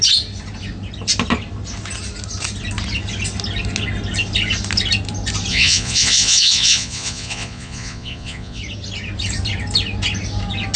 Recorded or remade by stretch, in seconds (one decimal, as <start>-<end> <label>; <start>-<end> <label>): 0.0-5.5 recorded; 5.5-8.6 remade; 8.6-10.8 recorded